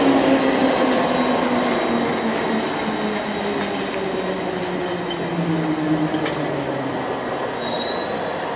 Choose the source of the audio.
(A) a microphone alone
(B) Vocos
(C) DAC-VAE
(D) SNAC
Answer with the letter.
A